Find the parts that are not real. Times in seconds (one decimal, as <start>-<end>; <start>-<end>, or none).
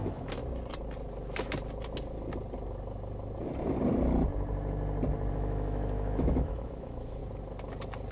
0.0-0.4; 5.3-7.2